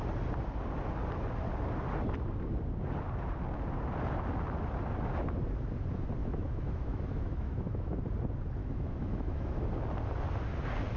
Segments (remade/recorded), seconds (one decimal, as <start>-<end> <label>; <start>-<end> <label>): 0.0-6.2 recorded; 6.2-8.0 remade; 8.0-8.6 recorded; 8.6-9.7 remade; 9.7-11.0 recorded